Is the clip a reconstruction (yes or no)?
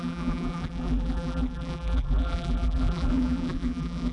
yes